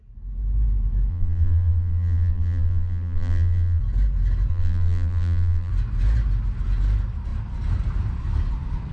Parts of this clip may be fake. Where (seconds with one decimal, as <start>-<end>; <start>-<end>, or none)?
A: 1.1-3.8; 4.5-5.7